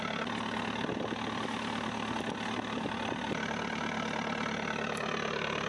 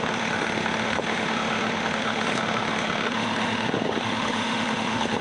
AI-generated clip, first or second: second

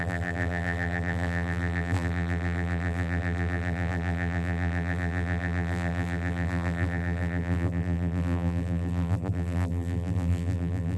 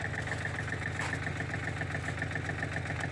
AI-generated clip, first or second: first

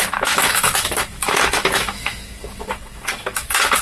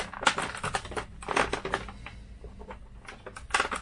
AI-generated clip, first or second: first